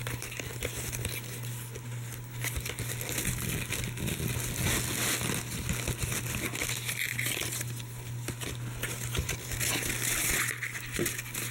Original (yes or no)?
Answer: yes